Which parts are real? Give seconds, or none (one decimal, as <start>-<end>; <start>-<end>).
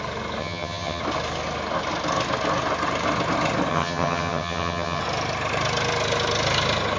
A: 0.0-0.4; 1.0-3.7; 5.0-7.0